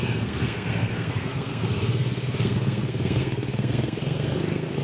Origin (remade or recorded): remade